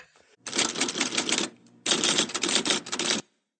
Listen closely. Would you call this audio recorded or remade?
recorded